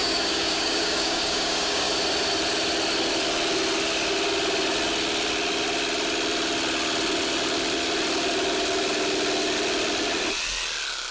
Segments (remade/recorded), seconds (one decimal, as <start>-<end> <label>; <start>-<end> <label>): 0.0-1.9 remade; 1.9-11.1 recorded

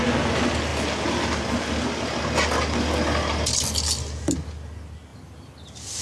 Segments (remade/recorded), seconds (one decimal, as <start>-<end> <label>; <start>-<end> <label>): 0.0-6.0 recorded

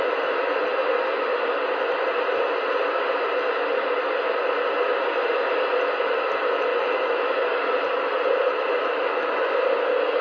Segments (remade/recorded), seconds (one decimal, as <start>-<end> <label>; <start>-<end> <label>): 0.0-6.7 recorded; 6.7-7.3 remade; 7.3-8.8 recorded; 8.8-9.5 remade; 9.5-10.2 recorded

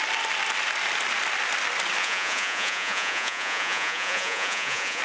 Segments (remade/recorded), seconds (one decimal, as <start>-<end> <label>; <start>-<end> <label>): 0.0-2.0 recorded; 2.0-5.0 remade

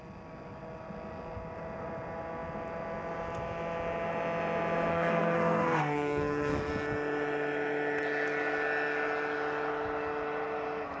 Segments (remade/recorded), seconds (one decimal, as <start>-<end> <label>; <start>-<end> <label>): 0.0-4.9 recorded; 4.9-6.7 remade; 6.7-11.0 recorded

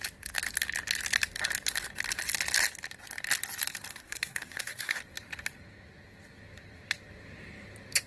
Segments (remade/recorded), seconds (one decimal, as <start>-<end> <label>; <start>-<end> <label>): 0.0-3.9 recorded; 3.9-5.0 remade; 5.0-8.1 recorded